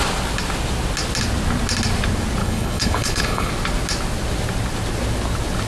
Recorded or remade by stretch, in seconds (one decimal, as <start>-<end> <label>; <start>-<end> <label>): 0.0-2.4 recorded; 2.4-3.5 remade; 3.5-5.7 recorded